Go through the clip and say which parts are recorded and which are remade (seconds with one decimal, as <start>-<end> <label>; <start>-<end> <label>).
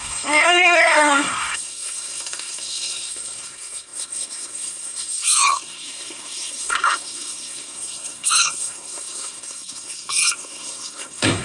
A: 0.0-11.4 remade